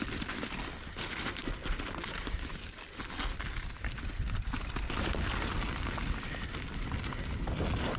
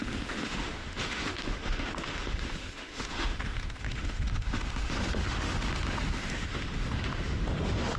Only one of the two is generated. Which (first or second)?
second